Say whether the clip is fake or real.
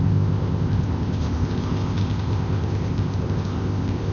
fake